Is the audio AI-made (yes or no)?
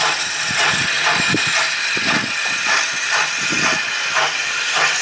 no